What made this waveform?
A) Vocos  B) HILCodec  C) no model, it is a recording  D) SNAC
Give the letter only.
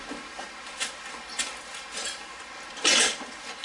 C